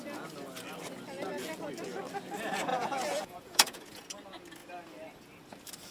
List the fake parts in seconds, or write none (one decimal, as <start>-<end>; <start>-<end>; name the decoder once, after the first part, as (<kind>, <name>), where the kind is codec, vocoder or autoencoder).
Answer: 2.7-4.0 (vocoder, Vocos)